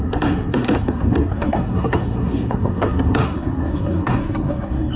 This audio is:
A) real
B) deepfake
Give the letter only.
B